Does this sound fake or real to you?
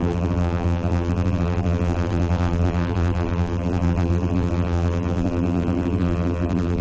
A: fake